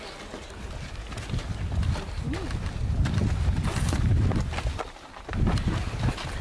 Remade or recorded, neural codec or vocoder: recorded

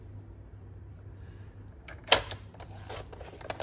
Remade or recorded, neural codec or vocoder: recorded